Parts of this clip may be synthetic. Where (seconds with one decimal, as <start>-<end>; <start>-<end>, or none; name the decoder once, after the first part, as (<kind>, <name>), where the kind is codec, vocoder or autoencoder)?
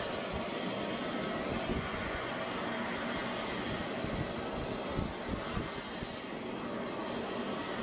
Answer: 1.7-2.3 (vocoder, Vocos)